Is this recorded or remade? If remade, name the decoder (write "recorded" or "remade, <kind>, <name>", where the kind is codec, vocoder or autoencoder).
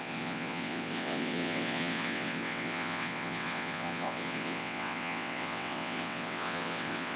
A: remade, vocoder, WaveNeXt